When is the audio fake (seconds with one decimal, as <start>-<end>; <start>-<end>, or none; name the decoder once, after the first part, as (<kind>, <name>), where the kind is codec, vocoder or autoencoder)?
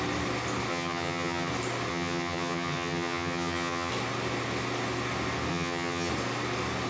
0.7-1.5 (vocoder, HiFi-GAN); 1.9-3.9; 5.5-6.1